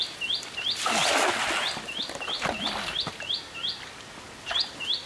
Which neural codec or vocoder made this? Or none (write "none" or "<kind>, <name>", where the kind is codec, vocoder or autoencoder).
none